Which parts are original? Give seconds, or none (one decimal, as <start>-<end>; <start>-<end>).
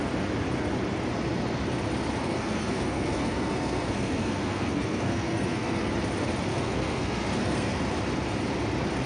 0.0-2.2; 5.9-6.5; 7.8-9.1